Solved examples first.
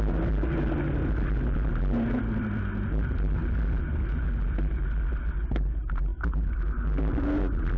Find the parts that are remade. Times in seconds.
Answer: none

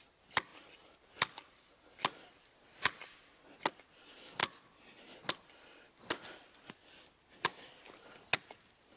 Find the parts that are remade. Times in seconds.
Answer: none

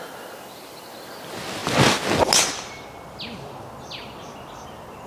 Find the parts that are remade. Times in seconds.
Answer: none

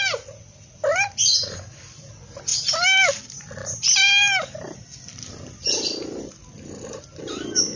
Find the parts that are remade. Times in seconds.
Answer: none

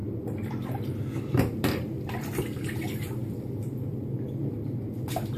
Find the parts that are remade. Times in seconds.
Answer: 0.0-3.2

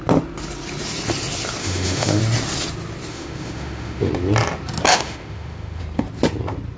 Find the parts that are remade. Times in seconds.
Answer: 1.6-2.2; 3.1-4.1; 4.9-5.8